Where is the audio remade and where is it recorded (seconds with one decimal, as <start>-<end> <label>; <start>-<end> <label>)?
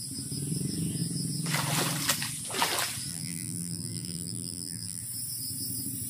0.0-3.1 recorded; 3.1-5.0 remade; 5.0-6.1 recorded